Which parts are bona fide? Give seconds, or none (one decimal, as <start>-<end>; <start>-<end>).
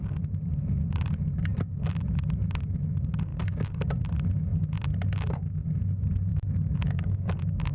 0.0-3.3; 3.8-6.3; 7.3-7.7